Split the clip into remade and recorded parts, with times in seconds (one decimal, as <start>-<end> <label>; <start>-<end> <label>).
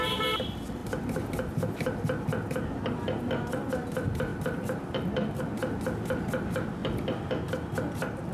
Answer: 0.0-8.3 recorded